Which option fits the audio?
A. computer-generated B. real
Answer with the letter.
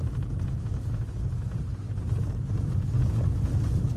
B